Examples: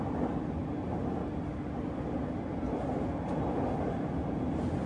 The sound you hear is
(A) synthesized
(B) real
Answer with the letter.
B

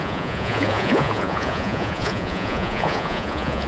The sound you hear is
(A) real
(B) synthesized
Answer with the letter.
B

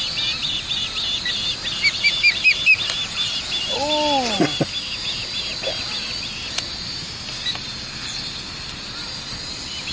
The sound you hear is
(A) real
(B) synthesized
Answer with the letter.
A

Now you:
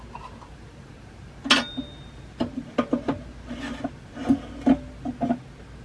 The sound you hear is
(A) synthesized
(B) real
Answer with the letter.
B